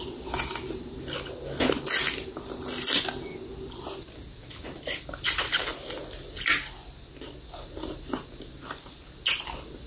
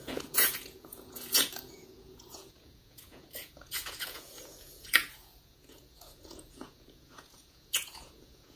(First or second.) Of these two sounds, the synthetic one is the second